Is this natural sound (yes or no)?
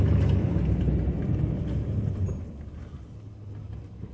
yes